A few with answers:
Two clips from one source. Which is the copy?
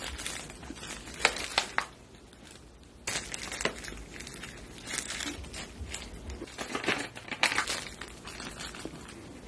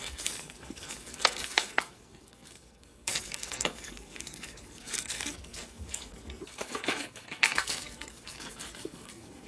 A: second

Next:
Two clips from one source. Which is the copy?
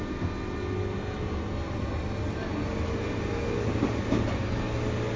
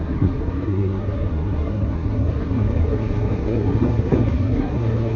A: second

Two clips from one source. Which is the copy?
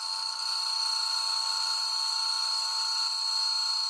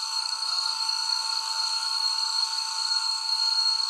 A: second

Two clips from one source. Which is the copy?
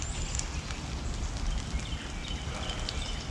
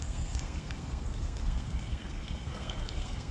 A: second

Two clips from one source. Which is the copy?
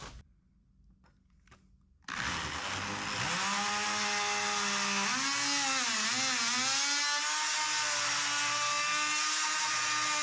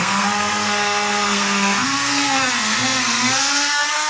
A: second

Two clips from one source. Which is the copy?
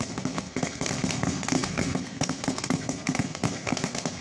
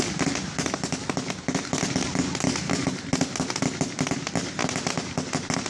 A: first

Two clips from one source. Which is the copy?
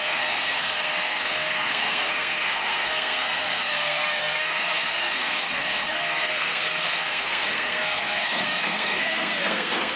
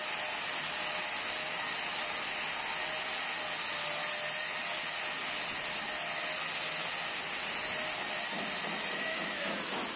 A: first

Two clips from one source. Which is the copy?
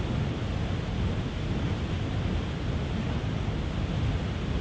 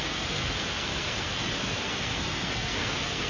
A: second